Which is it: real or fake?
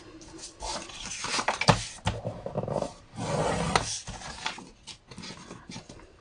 real